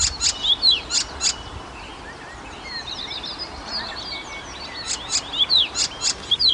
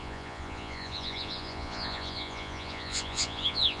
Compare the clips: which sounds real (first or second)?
first